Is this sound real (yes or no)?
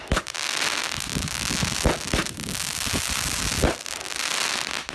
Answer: yes